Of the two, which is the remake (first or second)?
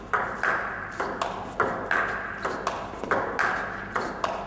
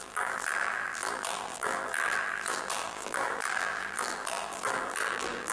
second